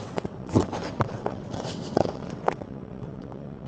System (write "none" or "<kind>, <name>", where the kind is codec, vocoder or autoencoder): vocoder, WaveNeXt